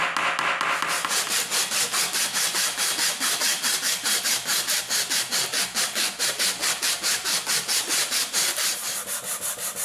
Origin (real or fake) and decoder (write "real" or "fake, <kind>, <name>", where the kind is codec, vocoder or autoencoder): real